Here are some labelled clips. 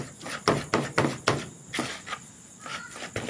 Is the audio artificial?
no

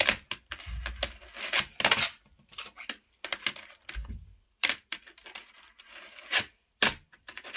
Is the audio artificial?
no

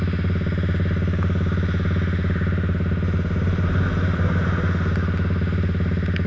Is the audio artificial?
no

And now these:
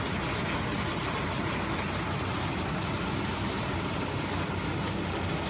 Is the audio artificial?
no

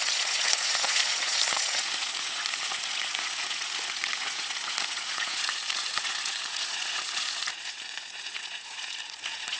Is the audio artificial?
yes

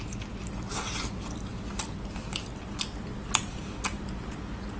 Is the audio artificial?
no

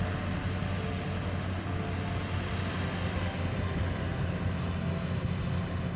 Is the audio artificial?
no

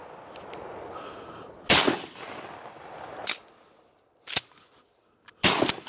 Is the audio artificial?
no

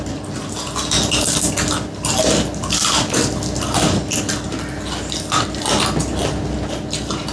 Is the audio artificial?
no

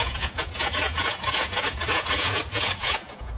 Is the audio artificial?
yes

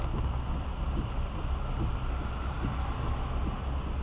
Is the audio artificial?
no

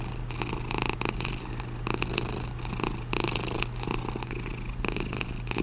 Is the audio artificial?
no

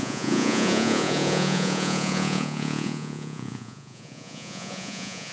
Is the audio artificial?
yes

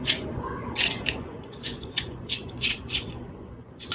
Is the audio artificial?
yes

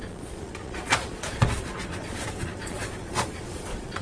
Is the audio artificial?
yes